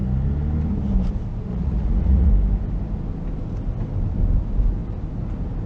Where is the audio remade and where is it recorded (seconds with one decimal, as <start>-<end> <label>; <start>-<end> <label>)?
0.0-1.5 recorded; 1.5-2.3 remade; 2.3-5.7 recorded